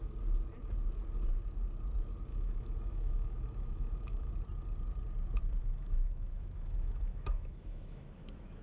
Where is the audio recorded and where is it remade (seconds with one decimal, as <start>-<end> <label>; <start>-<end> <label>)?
0.0-2.3 recorded; 2.3-4.3 remade; 4.3-5.6 recorded; 5.6-8.6 remade